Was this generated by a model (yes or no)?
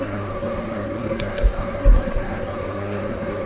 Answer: yes